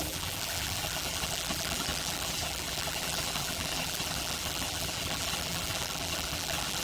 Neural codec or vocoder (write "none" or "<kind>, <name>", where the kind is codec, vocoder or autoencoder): vocoder, BigVGAN v2